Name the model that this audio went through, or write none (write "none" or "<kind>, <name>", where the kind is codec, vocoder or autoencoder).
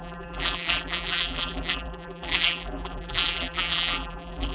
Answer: vocoder, BigVGAN v2